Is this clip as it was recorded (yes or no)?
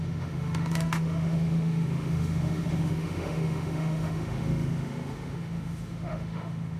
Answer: no